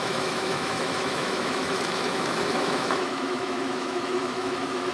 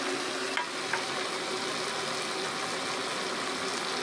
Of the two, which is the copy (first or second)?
first